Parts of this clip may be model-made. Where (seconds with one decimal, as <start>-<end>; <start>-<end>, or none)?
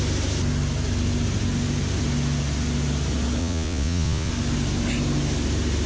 3.4-4.3